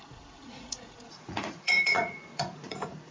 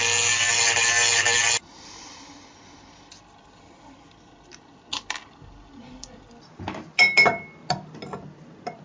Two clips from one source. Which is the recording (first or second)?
second